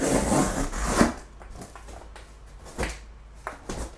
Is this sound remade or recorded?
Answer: recorded